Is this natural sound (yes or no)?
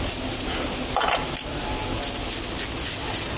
yes